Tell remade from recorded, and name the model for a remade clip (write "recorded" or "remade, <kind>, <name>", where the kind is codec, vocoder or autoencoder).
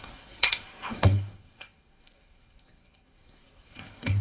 remade, codec, SNAC